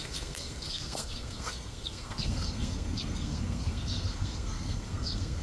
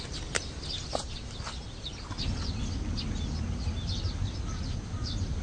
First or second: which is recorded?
second